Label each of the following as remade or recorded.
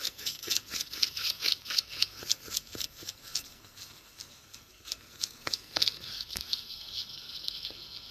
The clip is remade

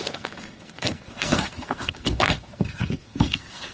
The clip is remade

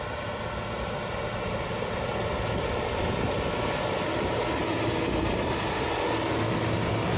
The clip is recorded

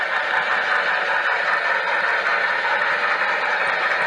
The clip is recorded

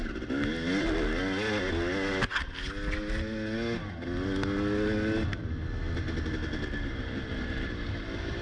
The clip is recorded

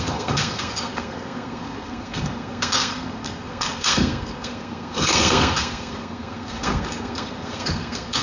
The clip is remade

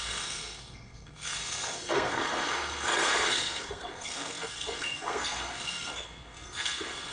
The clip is remade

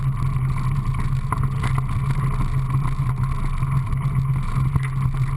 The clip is recorded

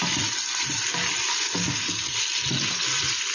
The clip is recorded